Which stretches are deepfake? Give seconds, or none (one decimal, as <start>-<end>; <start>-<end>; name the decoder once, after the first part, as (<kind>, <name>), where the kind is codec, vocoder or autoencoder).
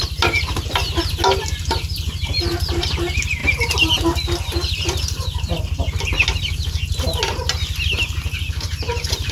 none